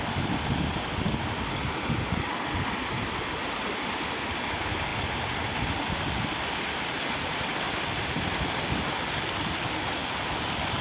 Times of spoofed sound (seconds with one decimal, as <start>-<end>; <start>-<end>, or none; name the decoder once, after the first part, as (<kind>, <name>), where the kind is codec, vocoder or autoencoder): none